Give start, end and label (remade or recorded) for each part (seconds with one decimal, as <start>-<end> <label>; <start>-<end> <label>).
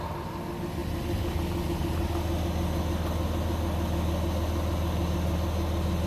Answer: 0.0-6.1 recorded